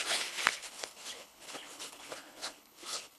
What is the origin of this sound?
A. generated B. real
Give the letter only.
A